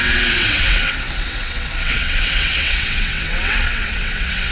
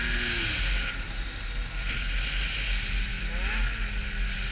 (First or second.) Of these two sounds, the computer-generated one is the first